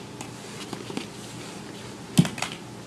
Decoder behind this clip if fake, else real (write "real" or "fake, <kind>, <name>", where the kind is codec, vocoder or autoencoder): real